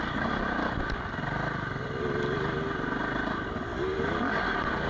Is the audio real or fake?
real